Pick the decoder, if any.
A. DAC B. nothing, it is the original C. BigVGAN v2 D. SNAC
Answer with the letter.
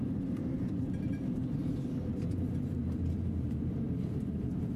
C